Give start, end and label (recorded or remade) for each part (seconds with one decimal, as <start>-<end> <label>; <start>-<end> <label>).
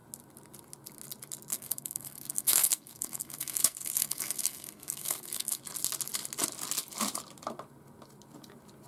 0.0-1.5 recorded; 1.5-5.6 remade; 5.6-8.9 recorded